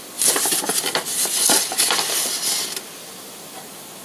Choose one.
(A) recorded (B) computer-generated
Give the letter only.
A